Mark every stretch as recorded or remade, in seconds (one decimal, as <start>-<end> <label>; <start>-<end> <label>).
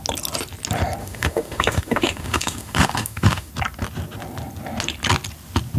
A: 0.0-1.0 recorded; 1.0-3.5 remade; 3.5-5.8 recorded